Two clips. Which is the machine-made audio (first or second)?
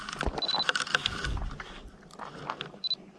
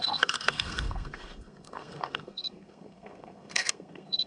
second